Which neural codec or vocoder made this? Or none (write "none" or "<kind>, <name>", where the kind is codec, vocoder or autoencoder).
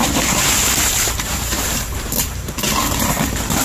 vocoder, BigVGAN v2